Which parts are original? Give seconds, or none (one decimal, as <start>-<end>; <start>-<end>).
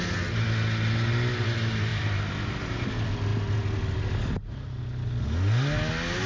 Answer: 0.0-1.9; 2.9-6.3